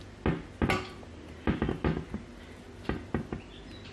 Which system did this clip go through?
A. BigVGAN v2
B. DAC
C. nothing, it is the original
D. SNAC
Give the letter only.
C